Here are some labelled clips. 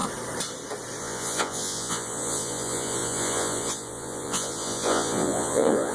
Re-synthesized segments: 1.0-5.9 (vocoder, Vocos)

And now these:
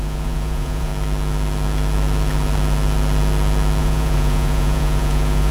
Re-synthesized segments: 0.0-0.9 (vocoder, Vocos); 3.8-5.5

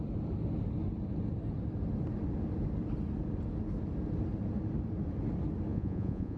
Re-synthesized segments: 5.7-6.4 (vocoder, Vocos)

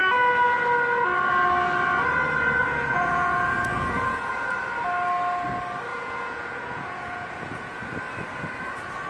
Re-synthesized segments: 2.9-4.5 (vocoder, Vocos); 5.9-7.9